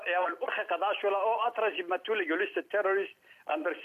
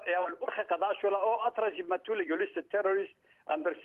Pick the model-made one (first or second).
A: second